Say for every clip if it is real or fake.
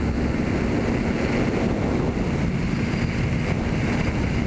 real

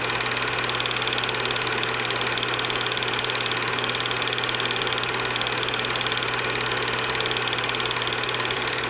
real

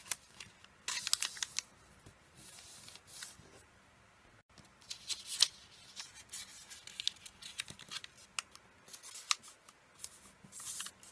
real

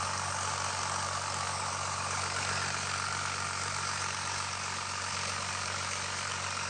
fake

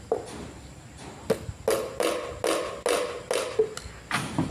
real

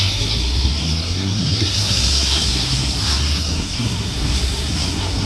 fake